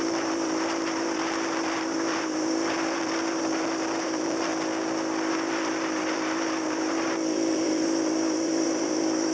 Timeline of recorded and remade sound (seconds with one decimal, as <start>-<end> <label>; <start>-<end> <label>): 0.0-4.5 remade; 4.5-5.3 recorded; 5.3-9.3 remade